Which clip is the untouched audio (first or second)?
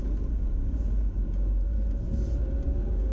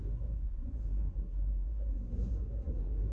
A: first